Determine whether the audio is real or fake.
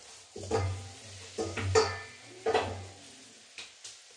real